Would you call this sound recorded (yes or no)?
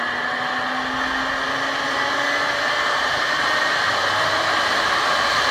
yes